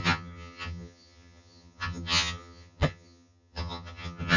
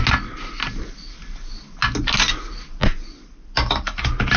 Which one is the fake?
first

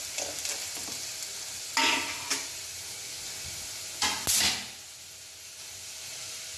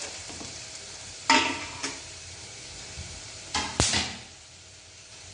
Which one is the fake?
second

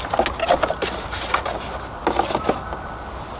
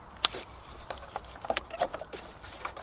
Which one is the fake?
second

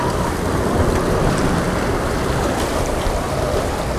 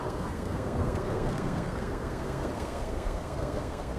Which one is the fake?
second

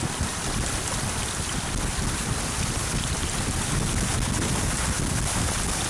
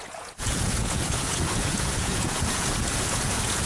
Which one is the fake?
second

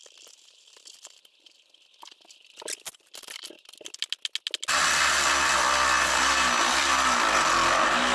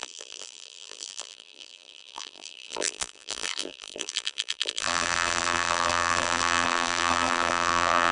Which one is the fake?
second